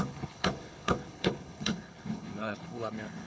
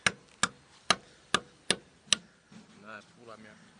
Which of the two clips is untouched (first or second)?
second